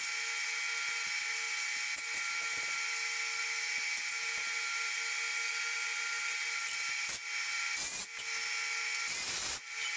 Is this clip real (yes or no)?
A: yes